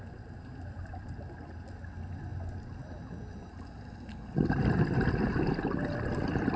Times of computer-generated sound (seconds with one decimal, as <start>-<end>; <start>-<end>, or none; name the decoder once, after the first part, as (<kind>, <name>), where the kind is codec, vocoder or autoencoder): none

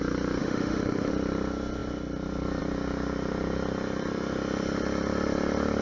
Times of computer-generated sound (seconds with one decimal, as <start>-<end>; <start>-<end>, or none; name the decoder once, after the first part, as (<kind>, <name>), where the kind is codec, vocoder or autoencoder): 0.4-1.1 (autoencoder, DAC-VAE)

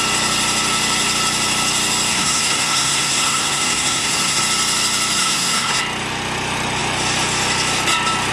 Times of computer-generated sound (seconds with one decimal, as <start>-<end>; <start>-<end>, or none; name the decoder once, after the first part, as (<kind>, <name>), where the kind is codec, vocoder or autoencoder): 2.1-4.4 (codec, SNAC); 5.2-5.8

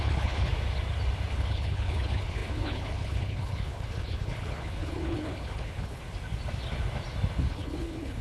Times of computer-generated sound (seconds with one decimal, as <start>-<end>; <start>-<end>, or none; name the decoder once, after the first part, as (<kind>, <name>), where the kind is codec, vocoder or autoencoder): 0.0-0.5 (codec, HILCodec); 1.3-6.0; 7.5-8.2

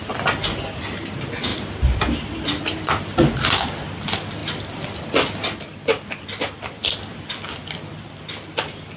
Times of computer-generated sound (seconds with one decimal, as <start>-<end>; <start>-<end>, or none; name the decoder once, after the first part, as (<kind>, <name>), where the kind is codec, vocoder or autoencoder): none

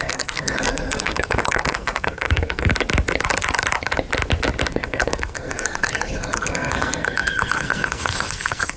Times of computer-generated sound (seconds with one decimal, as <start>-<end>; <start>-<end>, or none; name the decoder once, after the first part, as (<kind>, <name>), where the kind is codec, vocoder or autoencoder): 0.0-2.7 (codec, SNAC); 4.7-8.8

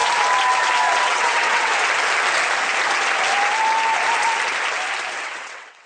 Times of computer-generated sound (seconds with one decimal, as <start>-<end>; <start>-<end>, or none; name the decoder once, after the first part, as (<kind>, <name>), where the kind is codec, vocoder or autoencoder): 1.0-1.7 (vocoder, WaveNeXt); 5.2-5.9